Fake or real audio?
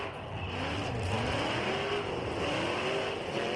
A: real